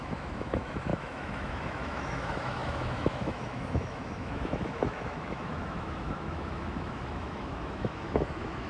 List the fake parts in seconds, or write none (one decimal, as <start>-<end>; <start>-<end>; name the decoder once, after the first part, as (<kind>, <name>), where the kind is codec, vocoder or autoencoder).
0.0-8.7 (autoencoder, DAC-VAE)